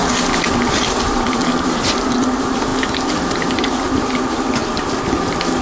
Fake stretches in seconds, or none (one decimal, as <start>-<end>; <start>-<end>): 0.5-4.6